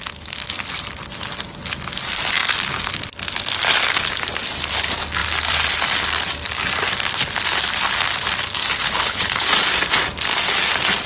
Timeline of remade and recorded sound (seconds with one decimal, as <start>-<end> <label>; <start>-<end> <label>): 0.0-8.8 recorded; 8.8-9.5 remade; 9.5-11.1 recorded